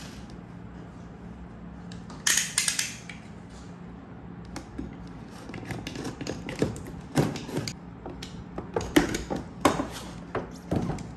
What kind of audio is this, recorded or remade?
recorded